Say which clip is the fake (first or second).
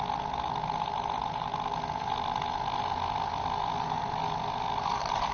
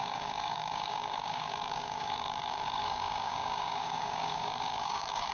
second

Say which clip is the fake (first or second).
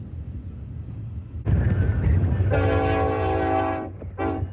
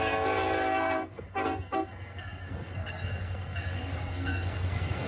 second